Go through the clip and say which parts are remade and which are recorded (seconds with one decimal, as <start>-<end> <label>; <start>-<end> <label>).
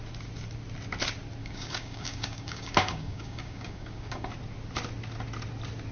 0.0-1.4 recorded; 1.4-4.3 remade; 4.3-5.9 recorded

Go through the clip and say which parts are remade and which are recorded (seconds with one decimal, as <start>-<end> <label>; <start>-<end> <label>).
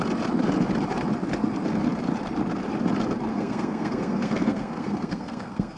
0.0-3.3 recorded; 3.3-5.8 remade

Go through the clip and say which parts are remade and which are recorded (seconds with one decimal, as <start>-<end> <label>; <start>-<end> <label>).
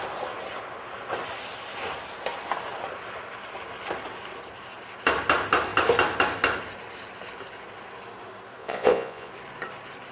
0.0-8.6 recorded; 8.6-9.3 remade; 9.3-10.1 recorded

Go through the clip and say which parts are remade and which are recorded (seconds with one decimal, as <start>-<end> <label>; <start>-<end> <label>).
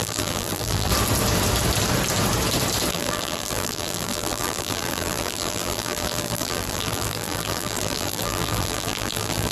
0.0-0.9 remade; 0.9-2.9 recorded; 2.9-9.5 remade